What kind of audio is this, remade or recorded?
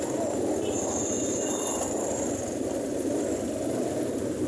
recorded